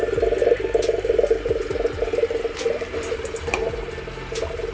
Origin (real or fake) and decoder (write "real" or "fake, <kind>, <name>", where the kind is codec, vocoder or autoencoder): real